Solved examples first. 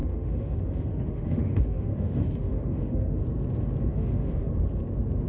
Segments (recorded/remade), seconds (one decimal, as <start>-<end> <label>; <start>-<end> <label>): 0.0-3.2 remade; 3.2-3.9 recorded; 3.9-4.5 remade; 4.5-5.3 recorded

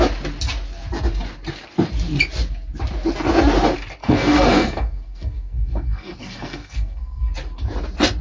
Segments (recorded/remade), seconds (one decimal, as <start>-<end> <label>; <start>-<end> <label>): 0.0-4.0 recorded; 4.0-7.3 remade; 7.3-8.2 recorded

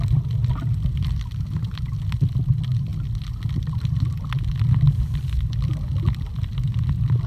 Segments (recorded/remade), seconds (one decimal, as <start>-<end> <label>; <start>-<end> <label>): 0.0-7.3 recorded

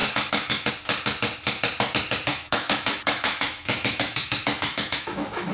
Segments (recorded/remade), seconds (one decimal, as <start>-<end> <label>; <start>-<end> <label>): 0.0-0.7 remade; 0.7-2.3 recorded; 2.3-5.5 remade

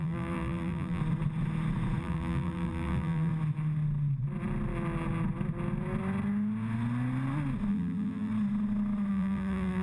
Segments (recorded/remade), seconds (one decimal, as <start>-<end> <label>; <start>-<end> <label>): 0.0-1.0 remade; 1.0-2.0 recorded; 2.0-3.3 remade; 3.3-7.7 recorded; 7.7-8.3 remade; 8.3-9.1 recorded; 9.1-9.8 remade

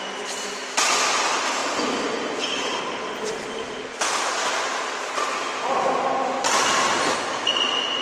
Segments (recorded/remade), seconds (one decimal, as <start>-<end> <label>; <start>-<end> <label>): 0.0-8.0 recorded